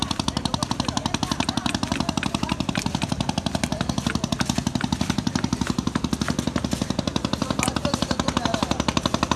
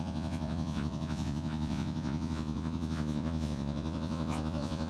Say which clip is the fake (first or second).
second